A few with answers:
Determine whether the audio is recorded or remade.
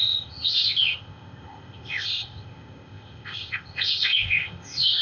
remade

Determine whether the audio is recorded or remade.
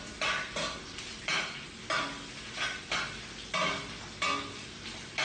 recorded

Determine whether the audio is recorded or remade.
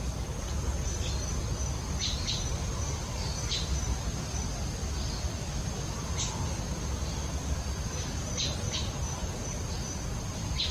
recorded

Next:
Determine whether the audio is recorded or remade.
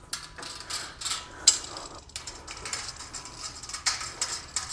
recorded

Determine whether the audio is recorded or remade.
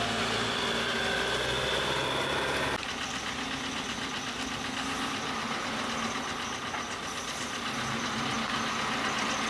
recorded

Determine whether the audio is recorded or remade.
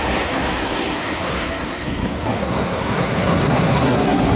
remade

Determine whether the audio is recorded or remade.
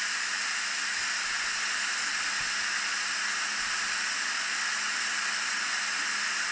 recorded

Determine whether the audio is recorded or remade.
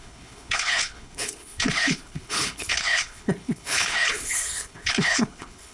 remade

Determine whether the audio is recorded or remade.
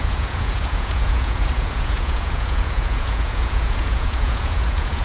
remade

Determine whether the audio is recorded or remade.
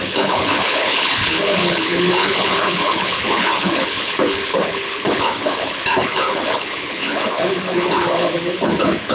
remade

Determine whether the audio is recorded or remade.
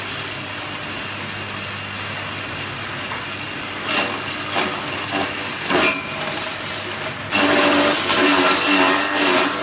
recorded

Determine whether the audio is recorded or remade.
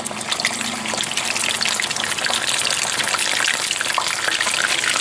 recorded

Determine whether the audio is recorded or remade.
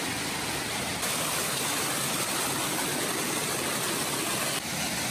recorded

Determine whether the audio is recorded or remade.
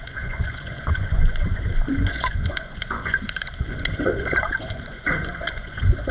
remade